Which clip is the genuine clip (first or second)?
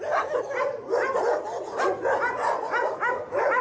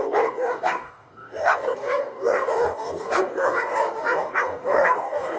first